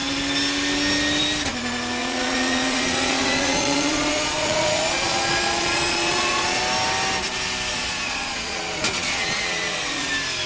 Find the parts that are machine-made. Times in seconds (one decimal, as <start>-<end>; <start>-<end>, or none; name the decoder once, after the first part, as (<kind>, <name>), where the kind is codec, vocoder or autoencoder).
2.0-6.6 (vocoder, Vocos); 7.7-10.1